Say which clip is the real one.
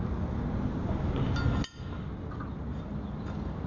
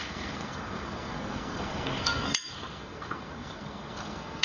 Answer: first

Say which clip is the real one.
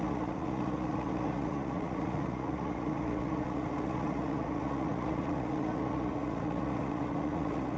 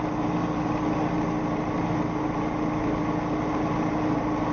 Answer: second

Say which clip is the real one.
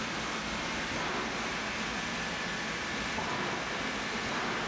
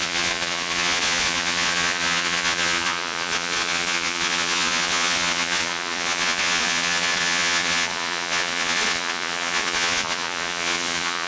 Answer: first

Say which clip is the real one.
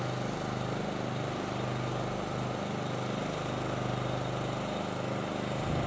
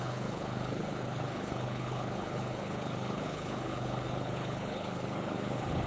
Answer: first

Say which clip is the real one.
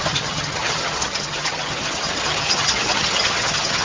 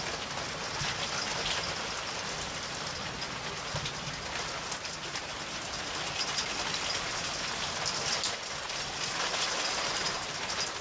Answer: second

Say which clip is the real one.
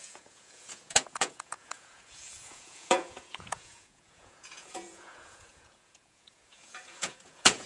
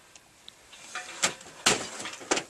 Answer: second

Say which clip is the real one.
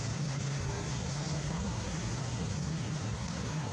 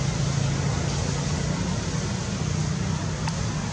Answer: second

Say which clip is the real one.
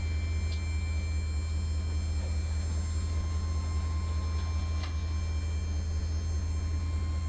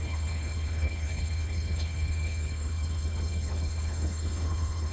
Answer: first